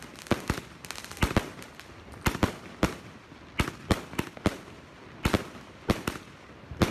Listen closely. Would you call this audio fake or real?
real